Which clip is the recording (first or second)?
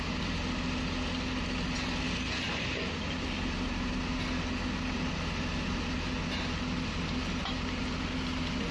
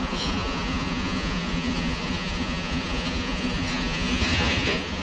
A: first